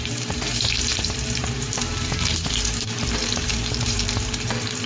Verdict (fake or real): fake